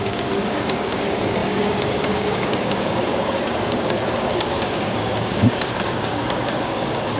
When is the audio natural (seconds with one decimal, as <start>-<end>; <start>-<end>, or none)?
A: none